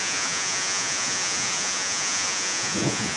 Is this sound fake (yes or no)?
yes